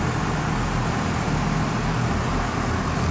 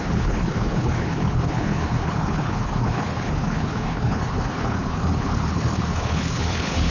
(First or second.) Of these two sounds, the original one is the first